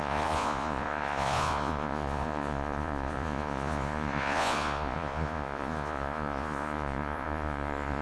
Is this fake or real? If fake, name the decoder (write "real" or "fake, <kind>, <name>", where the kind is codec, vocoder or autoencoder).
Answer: fake, vocoder, Vocos